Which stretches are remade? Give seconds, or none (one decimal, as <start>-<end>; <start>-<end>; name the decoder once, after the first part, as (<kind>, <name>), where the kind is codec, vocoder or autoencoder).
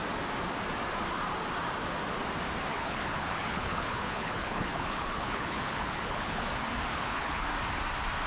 2.7-6.4 (codec, HILCodec); 6.9-7.5